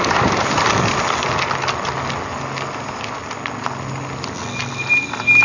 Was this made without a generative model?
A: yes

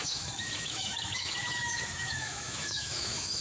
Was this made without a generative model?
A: no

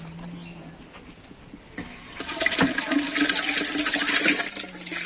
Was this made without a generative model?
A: yes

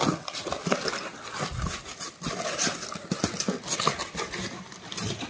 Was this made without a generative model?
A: yes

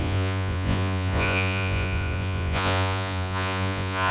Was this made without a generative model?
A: no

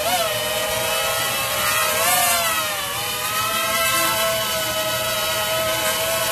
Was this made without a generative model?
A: yes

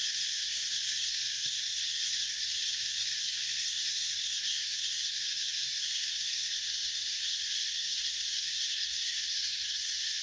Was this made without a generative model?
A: no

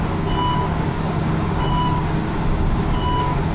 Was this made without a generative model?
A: no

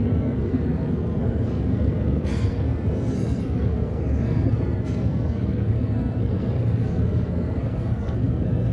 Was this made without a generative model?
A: no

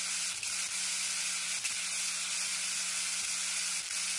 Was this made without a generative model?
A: yes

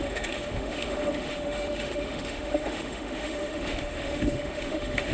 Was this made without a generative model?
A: no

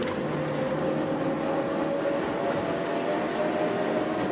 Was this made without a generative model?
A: yes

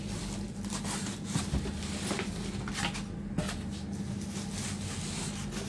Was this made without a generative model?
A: yes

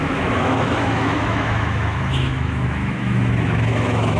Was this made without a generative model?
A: no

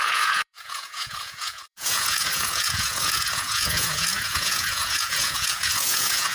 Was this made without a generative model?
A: no